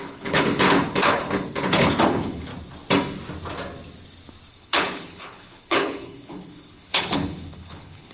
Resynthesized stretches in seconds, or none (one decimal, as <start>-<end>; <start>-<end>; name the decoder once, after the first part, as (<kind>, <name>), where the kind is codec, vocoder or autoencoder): 0.0-2.5 (codec, HILCodec); 4.5-8.1